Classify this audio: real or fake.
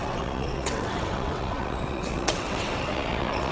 fake